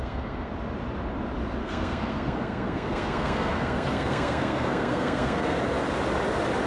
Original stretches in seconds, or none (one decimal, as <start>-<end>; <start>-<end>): 0.5-1.6; 5.6-6.7